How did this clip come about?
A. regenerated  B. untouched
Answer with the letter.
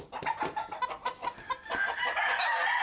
B